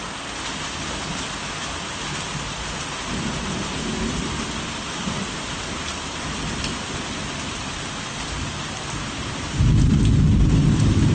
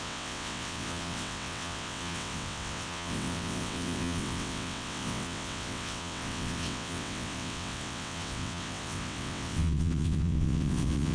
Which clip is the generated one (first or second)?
second